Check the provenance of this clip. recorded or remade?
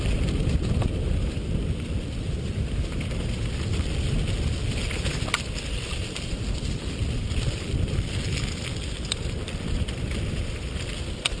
recorded